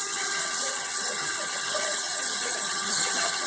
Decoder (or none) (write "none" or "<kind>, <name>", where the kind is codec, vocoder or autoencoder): vocoder, HiFi-GAN